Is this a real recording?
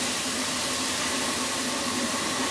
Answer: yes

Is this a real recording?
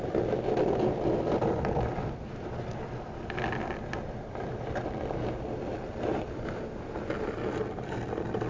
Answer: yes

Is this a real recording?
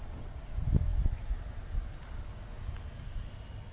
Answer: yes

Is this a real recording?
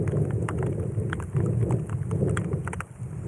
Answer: yes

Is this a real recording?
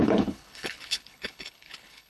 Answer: no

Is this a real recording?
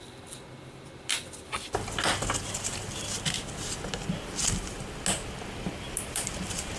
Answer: yes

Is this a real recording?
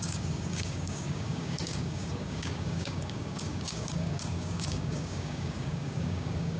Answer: no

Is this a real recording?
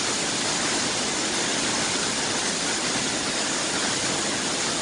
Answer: yes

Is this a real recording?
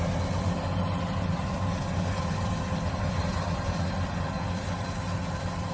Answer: yes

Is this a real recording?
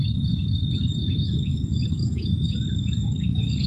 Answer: no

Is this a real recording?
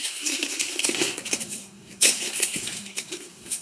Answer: no